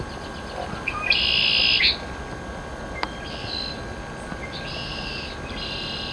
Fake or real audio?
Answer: real